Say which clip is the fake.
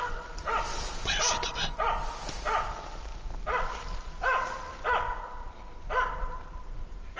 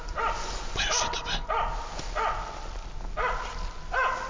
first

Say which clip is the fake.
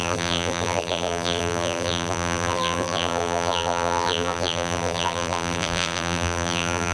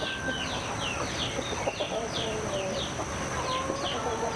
first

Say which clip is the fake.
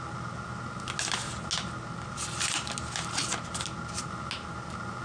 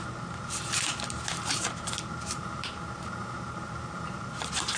second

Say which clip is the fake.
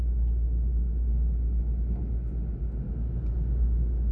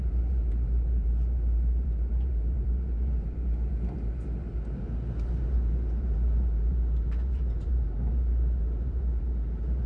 second